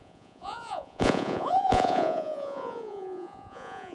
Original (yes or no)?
no